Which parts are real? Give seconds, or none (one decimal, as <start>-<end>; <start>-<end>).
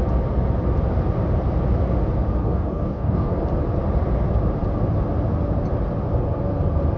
0.0-2.4; 3.4-7.0